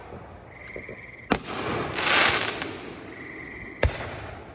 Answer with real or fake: real